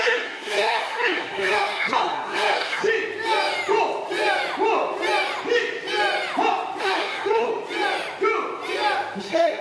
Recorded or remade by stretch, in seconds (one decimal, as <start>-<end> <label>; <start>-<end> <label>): 0.0-2.9 remade; 2.9-6.8 recorded; 6.8-7.5 remade; 7.5-9.2 recorded; 9.2-9.6 remade